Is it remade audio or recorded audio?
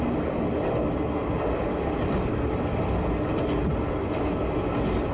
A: recorded